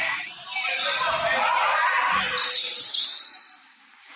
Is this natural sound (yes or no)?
yes